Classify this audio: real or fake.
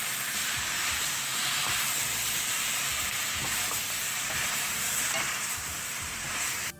fake